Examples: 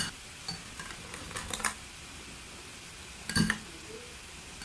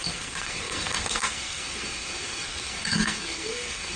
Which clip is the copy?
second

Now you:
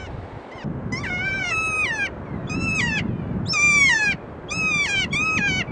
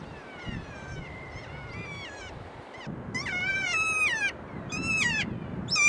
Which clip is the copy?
second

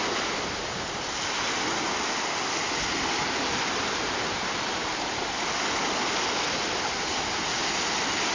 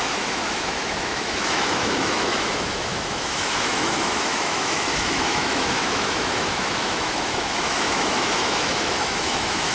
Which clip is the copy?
second